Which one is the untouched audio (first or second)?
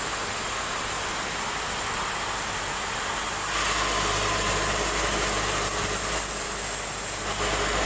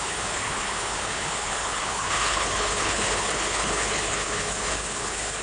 first